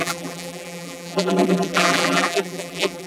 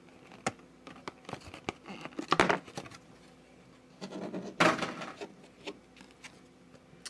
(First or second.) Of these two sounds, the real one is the second